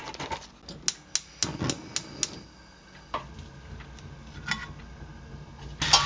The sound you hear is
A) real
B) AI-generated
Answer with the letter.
A